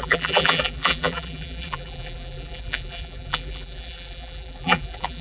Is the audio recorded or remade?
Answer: remade